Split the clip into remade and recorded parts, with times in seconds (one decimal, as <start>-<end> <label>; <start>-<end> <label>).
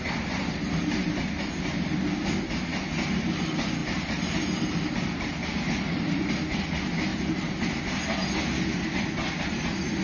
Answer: 0.0-3.8 recorded; 3.8-6.3 remade; 6.3-10.0 recorded